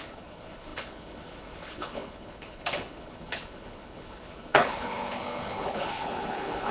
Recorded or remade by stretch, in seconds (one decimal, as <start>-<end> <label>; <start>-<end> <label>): 0.0-6.7 remade